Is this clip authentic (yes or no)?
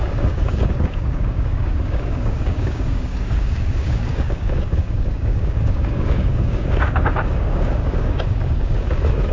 no